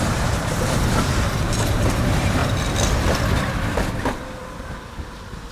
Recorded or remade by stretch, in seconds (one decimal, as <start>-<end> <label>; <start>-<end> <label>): 0.0-2.4 remade; 2.4-4.4 recorded; 4.4-5.5 remade